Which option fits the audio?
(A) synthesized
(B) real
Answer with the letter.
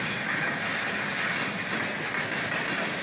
B